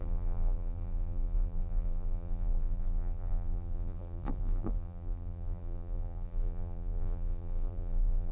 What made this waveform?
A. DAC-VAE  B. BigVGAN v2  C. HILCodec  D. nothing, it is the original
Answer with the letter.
B